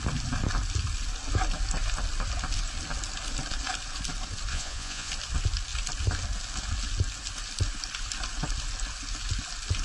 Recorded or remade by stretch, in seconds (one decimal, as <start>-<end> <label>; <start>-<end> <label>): 0.0-4.5 recorded; 4.5-5.1 remade; 5.1-9.8 recorded